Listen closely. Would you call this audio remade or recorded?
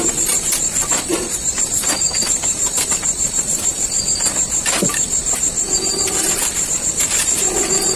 remade